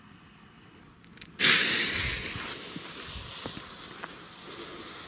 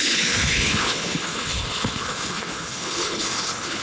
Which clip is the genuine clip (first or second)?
first